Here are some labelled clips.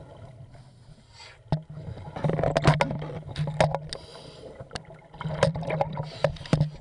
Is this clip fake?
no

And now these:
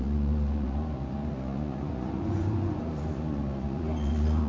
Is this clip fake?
yes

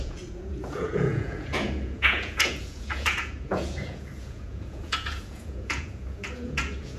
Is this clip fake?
yes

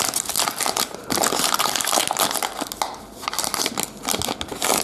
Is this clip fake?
no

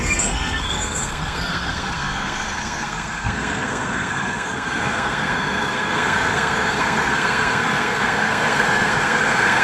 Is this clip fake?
yes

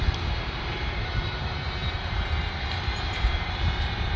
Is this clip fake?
yes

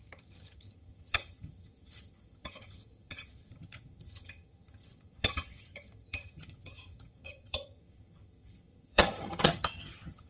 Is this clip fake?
yes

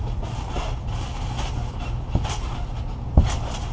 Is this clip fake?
no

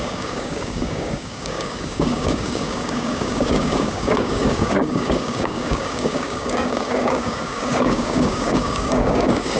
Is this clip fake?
yes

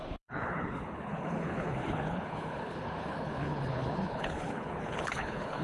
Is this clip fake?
yes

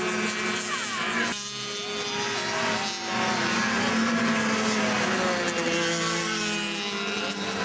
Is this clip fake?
no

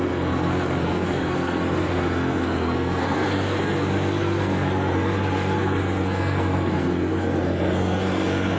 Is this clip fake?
yes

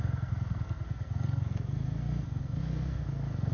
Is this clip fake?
yes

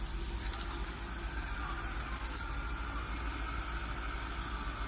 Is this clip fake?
no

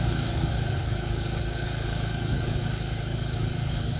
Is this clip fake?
yes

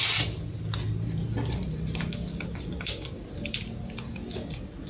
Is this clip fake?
no